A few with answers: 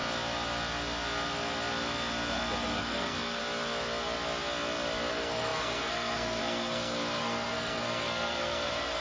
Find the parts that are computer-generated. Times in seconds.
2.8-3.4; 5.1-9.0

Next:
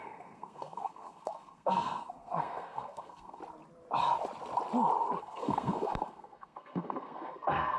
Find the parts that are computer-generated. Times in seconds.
0.0-3.4; 5.2-7.8

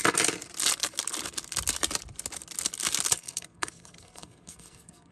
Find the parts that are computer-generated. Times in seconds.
3.1-5.1

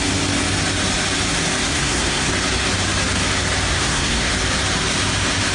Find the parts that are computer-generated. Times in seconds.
1.7-2.3; 3.7-4.3

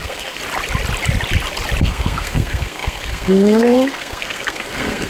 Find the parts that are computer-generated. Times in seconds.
0.0-0.4; 1.8-5.1

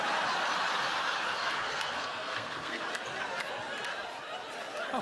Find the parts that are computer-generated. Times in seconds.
1.4-2.8